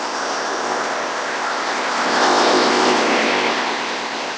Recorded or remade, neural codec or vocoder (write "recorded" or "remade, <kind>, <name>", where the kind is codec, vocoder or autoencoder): remade, codec, ZipCodec